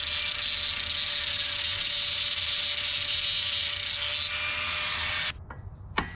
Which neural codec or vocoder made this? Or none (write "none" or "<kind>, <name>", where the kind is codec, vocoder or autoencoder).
none